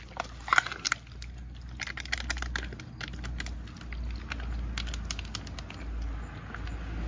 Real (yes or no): yes